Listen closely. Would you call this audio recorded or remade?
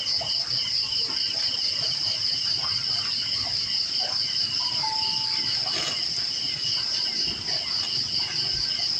recorded